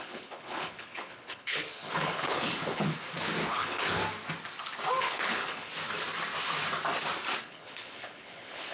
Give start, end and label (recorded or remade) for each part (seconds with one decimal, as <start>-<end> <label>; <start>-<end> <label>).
0.0-2.9 remade; 2.9-3.5 recorded; 3.5-4.0 remade; 4.0-5.0 recorded; 5.0-5.7 remade; 5.7-7.4 recorded; 7.4-8.7 remade